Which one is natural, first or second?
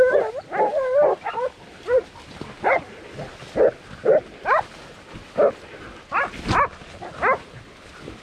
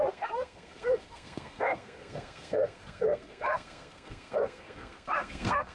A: first